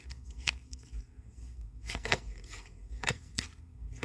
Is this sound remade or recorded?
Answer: remade